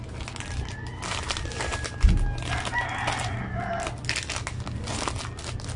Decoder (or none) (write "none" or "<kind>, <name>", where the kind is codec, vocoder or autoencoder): none